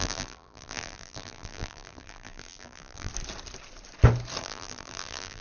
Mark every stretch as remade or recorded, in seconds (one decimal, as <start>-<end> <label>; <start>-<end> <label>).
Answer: 0.0-3.1 remade; 3.1-4.4 recorded; 4.4-5.4 remade